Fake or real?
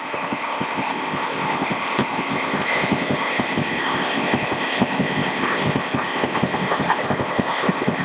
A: fake